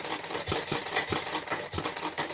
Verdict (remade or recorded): remade